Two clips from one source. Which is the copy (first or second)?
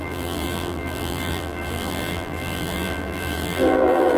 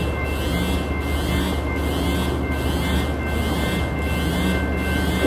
first